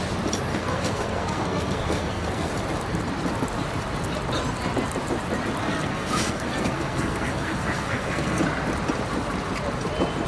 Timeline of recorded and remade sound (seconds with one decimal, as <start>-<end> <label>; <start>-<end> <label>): 0.0-0.5 recorded; 0.5-2.5 remade; 2.5-5.6 recorded; 5.6-8.4 remade; 8.4-10.3 recorded